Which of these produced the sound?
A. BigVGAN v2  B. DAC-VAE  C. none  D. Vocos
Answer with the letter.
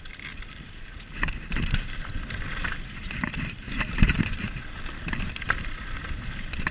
A